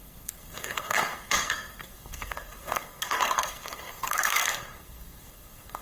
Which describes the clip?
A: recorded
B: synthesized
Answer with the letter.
B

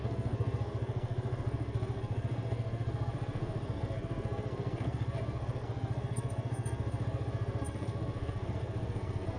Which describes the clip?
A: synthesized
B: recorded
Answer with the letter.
A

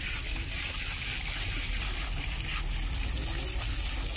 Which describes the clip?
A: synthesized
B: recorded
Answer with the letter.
B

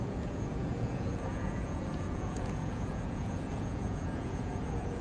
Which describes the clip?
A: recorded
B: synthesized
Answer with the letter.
B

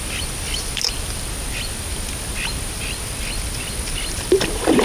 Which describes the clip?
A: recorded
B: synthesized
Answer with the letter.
A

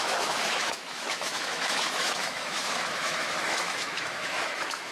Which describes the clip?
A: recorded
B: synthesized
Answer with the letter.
B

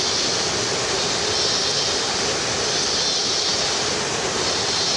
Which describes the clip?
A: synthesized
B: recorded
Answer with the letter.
B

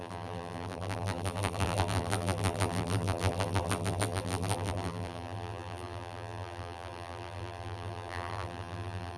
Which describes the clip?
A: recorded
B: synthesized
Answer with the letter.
B